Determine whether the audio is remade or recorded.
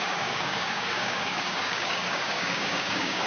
remade